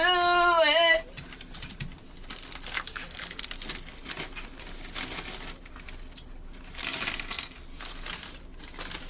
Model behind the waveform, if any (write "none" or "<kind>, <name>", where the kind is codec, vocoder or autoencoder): none